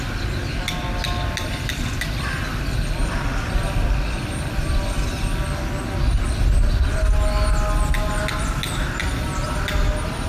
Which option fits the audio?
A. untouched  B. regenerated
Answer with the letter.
A